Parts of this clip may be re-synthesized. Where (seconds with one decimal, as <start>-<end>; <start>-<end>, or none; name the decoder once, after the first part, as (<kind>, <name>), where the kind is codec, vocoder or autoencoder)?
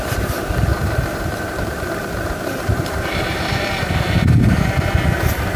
0.0-5.6 (vocoder, BigVGAN v2)